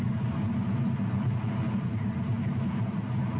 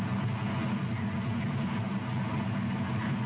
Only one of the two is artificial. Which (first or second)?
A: first